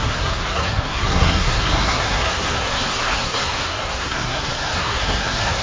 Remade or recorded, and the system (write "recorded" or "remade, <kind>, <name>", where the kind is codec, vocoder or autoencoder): remade, codec, SNAC